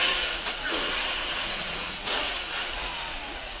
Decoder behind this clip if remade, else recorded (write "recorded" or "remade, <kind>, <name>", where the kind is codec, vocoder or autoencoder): remade, vocoder, Vocos